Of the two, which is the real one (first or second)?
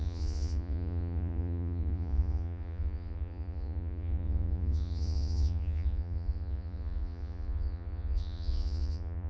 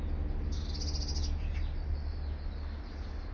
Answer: second